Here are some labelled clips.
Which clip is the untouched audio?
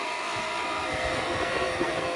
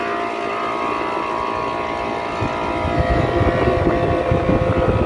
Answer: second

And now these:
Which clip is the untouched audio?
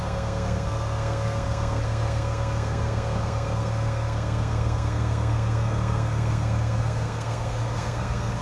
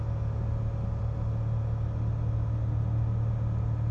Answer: second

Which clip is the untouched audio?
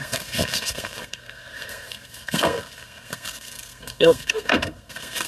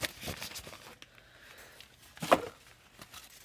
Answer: second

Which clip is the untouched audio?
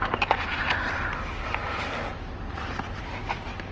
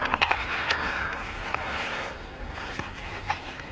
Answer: first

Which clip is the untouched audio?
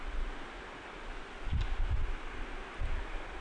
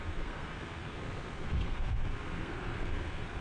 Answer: first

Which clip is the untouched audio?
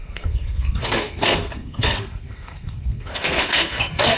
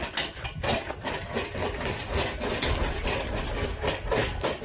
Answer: second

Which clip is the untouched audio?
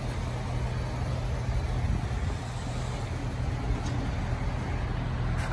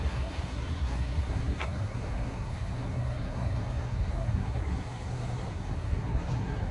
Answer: first